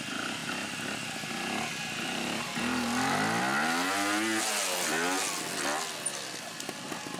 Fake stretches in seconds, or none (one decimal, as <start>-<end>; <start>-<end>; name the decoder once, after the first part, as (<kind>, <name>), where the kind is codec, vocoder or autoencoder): none